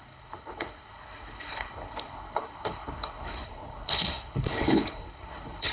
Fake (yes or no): yes